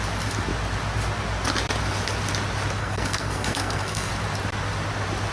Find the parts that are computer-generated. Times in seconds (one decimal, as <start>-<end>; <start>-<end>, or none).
2.8-4.1